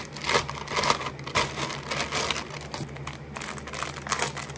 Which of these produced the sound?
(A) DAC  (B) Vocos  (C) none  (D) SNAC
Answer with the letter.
C